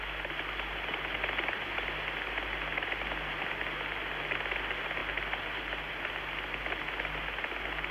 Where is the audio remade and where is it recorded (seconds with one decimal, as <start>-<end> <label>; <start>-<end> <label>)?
0.0-7.9 recorded